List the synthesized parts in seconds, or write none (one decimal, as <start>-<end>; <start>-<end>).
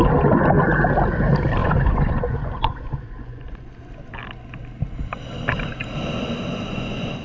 1.6-3.7; 6.5-7.2